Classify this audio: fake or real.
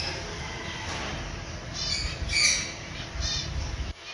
real